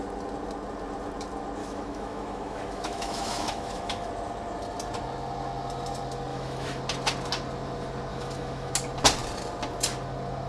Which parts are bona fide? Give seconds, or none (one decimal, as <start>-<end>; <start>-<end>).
0.0-1.6; 4.1-6.3; 6.8-8.1; 8.7-10.5